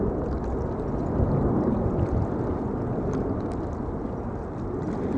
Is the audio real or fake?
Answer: real